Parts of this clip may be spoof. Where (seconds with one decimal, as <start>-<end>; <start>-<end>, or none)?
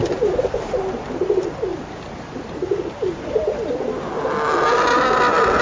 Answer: 1.7-3.1